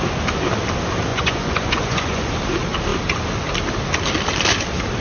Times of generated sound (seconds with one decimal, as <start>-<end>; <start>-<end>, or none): 1.1-2.3